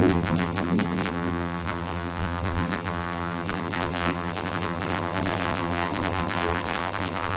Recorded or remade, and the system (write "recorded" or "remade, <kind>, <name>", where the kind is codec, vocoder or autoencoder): remade, vocoder, BigVGAN v2